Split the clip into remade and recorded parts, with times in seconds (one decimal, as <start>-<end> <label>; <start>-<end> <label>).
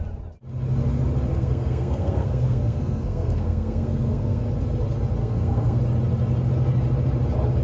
0.0-1.3 recorded; 1.3-4.4 remade; 4.4-5.2 recorded; 5.2-5.8 remade; 5.8-7.6 recorded